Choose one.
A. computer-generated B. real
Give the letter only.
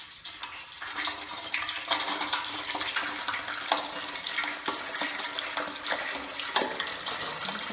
B